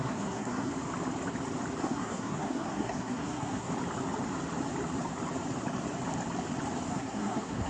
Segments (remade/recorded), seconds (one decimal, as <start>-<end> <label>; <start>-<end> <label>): 0.0-0.7 remade; 0.7-1.8 recorded; 1.8-3.7 remade; 3.7-6.9 recorded; 6.9-7.7 remade